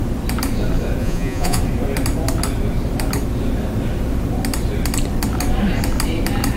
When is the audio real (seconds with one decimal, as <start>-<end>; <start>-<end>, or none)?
0.0-1.0; 1.6-6.6